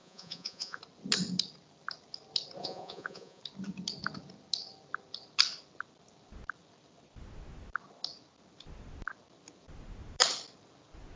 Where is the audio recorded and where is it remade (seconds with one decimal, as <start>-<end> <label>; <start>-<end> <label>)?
0.0-0.8 remade; 0.8-2.6 recorded; 2.6-3.4 remade; 3.4-11.2 recorded